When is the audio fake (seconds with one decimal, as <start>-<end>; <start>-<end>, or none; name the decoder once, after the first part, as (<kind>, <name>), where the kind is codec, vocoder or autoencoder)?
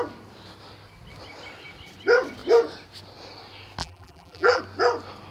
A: 3.8-4.6 (vocoder, BigVGAN v2)